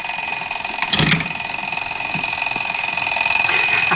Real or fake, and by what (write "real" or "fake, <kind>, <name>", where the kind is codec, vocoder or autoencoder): real